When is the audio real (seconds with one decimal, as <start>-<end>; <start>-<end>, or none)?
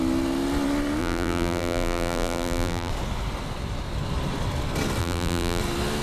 0.0-1.0; 2.9-5.0; 5.6-6.0